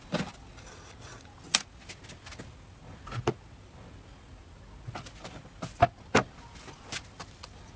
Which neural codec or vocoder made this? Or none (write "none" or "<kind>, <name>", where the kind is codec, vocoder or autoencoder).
none